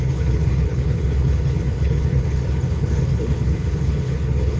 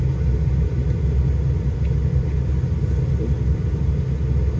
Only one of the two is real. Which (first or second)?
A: second